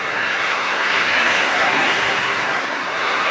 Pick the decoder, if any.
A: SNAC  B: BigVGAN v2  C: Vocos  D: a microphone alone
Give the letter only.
A